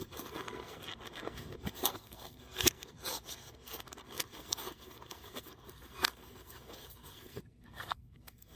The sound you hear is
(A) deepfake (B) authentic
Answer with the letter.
A